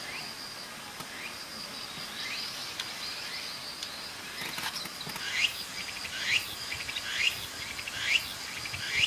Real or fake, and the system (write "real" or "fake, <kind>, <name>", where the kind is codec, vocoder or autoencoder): real